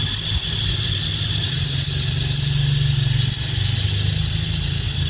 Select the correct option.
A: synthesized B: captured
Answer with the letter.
B